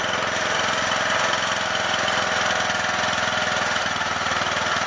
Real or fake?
real